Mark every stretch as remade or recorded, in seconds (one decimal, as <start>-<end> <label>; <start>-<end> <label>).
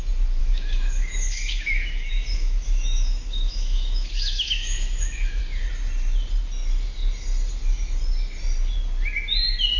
0.0-0.4 recorded; 0.4-5.4 remade; 5.4-9.8 recorded